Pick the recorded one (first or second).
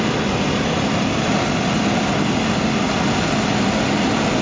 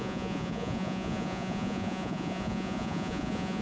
first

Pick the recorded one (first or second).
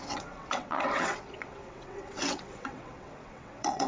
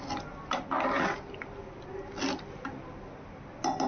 second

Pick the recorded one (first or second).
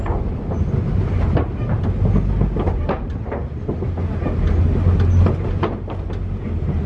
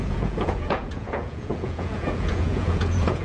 first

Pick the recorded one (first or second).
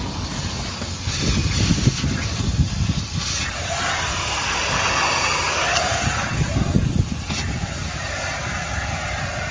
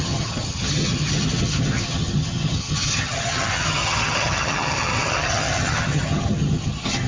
first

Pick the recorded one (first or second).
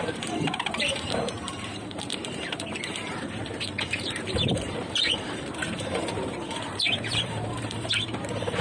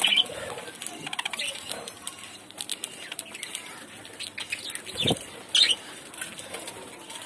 second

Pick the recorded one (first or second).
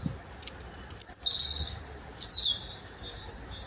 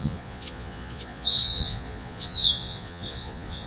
first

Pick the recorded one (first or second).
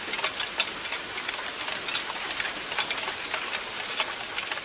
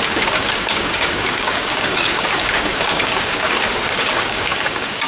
first